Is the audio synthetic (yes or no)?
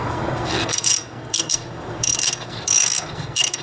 yes